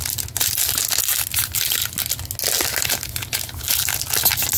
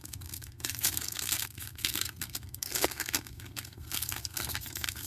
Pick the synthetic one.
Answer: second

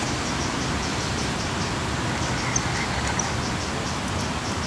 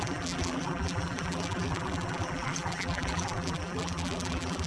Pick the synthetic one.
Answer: second